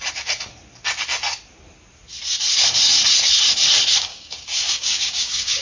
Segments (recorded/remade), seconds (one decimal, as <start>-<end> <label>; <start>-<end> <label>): 0.0-4.1 recorded; 4.1-5.6 remade